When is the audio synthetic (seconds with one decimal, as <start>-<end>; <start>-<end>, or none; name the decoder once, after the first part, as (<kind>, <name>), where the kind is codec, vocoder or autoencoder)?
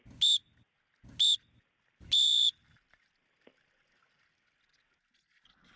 none